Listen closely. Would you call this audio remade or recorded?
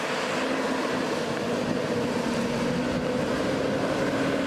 recorded